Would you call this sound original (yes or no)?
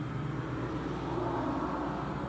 yes